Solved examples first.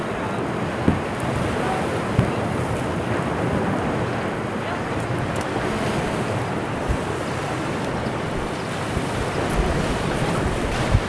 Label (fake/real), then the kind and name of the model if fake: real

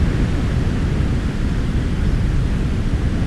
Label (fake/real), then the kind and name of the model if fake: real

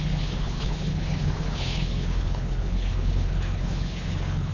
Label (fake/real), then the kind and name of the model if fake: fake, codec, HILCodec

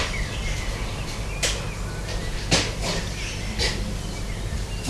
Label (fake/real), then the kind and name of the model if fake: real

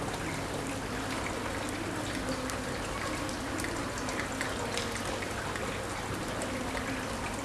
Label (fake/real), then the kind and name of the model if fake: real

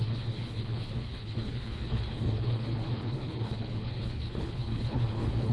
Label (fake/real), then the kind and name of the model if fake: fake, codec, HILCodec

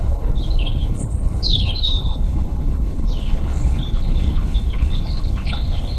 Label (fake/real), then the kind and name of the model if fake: fake, codec, HILCodec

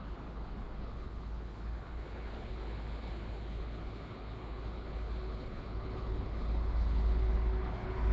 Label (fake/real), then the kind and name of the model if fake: fake, codec, HILCodec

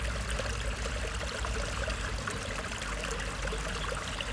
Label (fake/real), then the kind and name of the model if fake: real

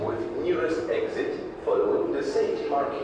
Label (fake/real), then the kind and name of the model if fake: real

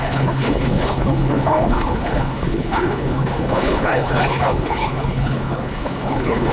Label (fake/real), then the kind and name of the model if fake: fake, codec, HILCodec